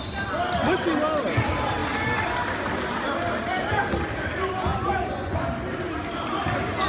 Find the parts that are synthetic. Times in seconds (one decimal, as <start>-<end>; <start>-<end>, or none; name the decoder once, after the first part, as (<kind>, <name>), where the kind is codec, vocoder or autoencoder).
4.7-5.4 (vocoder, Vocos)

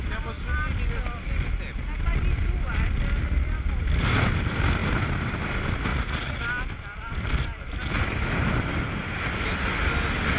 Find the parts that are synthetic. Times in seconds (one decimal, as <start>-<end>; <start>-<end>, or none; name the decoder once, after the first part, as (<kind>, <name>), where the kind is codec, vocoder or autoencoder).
5.9-6.4 (vocoder, Vocos)

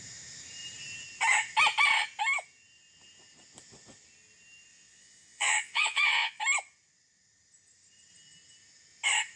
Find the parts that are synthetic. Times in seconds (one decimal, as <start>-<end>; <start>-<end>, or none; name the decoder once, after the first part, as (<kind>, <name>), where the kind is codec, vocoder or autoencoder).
4.7-6.4 (vocoder, Vocos)

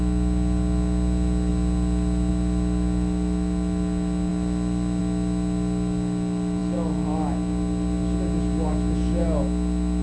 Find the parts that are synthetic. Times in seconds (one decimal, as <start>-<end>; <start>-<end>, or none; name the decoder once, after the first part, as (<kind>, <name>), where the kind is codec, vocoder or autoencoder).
none

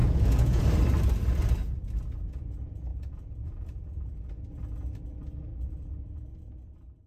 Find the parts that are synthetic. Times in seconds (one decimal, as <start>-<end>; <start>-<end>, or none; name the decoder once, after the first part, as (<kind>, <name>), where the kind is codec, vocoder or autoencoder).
0.0-0.6 (vocoder, Vocos); 2.9-4.5; 5.5-6.5

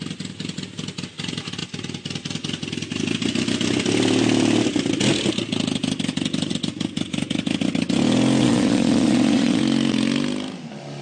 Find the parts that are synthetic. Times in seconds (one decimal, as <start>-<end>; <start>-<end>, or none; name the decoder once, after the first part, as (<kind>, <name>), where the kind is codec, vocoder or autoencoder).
8.4-9.6 (vocoder, Vocos)

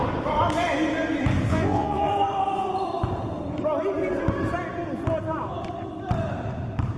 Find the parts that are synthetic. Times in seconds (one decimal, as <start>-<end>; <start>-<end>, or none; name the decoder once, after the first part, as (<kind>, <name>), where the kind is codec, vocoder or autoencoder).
1.5-2.1 (vocoder, Vocos)

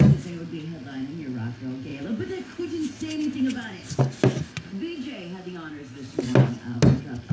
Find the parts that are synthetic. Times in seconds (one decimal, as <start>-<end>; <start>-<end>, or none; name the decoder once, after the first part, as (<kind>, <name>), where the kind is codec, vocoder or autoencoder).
none